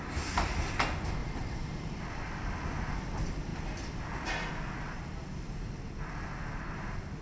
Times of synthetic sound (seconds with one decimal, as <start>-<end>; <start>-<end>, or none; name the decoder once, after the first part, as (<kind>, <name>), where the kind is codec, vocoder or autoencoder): 1.2-2.0 (vocoder, BigVGAN v2)